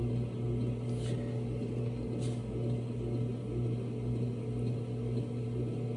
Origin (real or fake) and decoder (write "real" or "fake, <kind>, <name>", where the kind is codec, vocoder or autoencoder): real